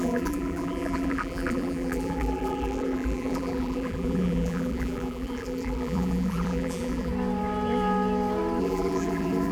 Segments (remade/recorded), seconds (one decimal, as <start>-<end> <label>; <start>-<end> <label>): 0.0-7.1 remade; 7.1-8.6 recorded; 8.6-9.5 remade